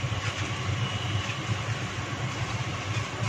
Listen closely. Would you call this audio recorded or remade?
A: recorded